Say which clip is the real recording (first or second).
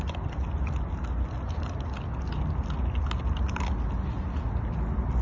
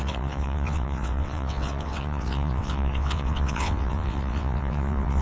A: first